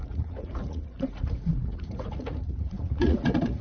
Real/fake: fake